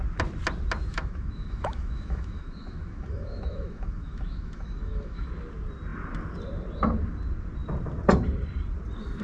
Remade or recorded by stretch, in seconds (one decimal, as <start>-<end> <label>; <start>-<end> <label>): 0.0-0.9 recorded; 0.9-5.3 remade; 5.3-9.2 recorded